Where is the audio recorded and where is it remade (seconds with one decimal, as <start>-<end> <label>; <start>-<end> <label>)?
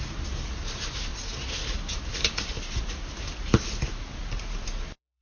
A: 0.0-1.1 remade; 1.1-4.2 recorded; 4.2-5.2 remade